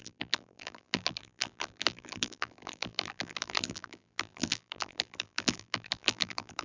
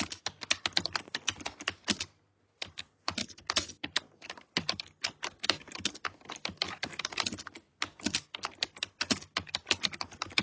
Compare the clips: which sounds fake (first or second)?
first